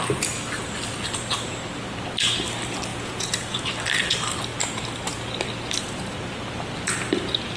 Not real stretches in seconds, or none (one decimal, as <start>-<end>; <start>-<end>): 2.9-3.7